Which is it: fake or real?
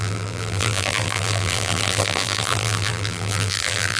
fake